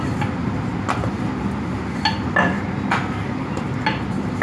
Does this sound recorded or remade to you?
recorded